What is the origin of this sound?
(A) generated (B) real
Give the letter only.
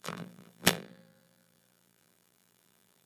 A